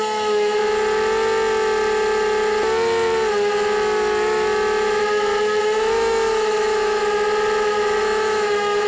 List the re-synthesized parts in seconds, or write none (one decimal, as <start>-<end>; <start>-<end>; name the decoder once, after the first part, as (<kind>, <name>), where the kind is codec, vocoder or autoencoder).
0.0-0.6 (autoencoder, DAC-VAE); 5.6-7.0; 8.0-8.9